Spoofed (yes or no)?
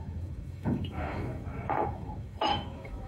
yes